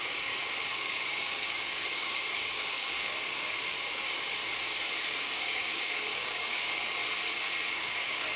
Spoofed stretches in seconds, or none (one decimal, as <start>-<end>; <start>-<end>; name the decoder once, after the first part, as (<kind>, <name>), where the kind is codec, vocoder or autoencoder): 0.0-4.4 (codec, DAC); 5.0-7.0; 7.7-8.4